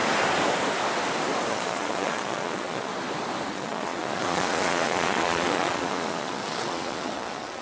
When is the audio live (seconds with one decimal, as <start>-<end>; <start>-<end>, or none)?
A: 0.0-1.5; 2.9-3.5